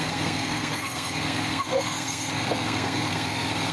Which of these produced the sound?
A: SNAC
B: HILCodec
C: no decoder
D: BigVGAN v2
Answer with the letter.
A